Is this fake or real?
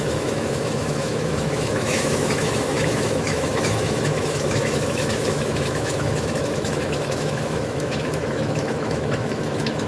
fake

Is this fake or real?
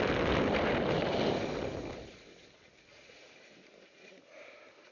real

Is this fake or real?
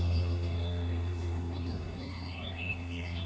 fake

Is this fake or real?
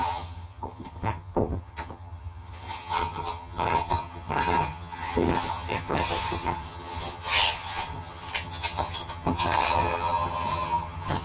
fake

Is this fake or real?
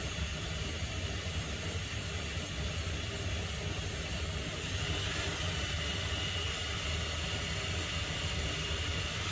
real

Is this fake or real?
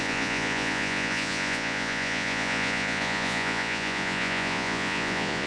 fake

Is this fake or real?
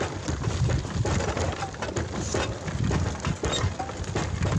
real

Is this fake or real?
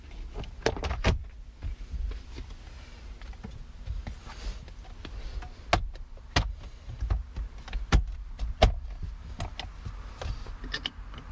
real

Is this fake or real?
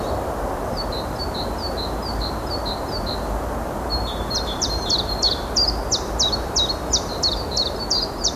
fake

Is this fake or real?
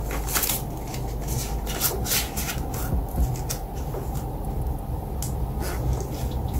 real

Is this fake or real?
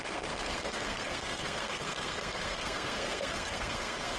fake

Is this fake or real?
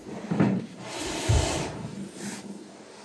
fake